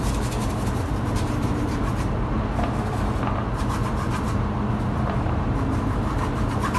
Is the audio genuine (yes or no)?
no